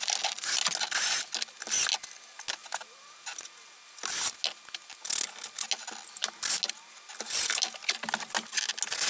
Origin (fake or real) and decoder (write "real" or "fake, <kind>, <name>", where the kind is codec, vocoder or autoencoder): real